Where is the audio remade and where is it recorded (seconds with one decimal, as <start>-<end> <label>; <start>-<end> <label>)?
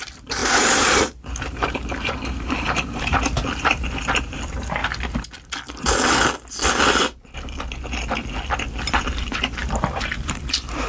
0.0-4.8 remade; 4.8-8.8 recorded; 8.8-10.9 remade